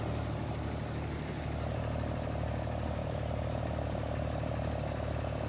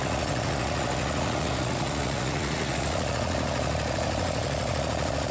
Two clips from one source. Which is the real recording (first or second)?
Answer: first